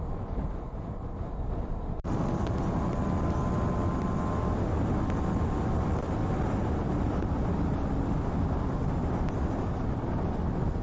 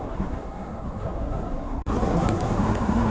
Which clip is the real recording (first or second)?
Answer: first